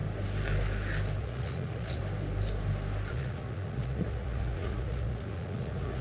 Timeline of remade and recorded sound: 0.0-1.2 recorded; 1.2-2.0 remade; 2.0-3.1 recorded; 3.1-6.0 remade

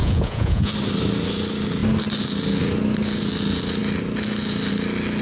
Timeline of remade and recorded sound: 0.0-0.7 remade; 0.7-5.2 recorded

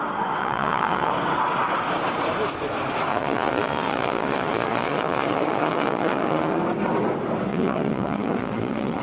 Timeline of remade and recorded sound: 0.0-0.4 recorded; 0.4-1.1 remade; 1.1-3.1 recorded; 3.1-6.6 remade; 6.6-7.5 recorded; 7.5-9.0 remade

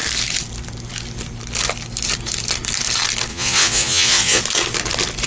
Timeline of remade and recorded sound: 0.0-3.3 recorded; 3.3-4.4 remade; 4.4-5.3 recorded

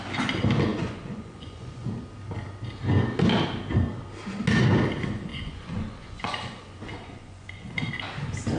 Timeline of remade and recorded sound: 0.0-0.7 recorded; 0.7-1.9 remade; 1.9-5.3 recorded; 5.3-7.9 remade; 7.9-8.6 recorded

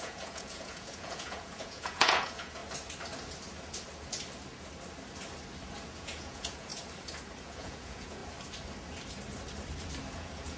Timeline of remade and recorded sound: 0.0-2.6 remade; 2.6-5.9 recorded; 5.9-6.7 remade; 6.7-7.4 recorded; 7.4-8.2 remade; 8.2-10.1 recorded; 10.1-10.6 remade

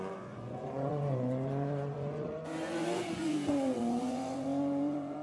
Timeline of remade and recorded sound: 0.0-5.2 remade

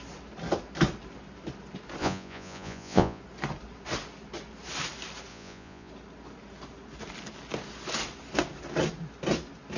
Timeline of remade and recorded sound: 0.0-2.0 recorded; 2.0-3.2 remade; 3.2-5.3 recorded; 5.3-5.9 remade; 5.9-9.8 recorded